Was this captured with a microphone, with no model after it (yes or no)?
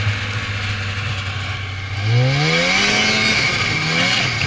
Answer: yes